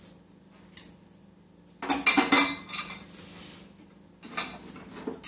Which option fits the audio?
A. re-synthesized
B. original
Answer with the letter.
B